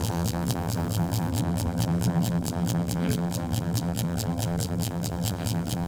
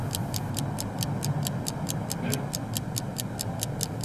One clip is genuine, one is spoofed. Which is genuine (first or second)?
second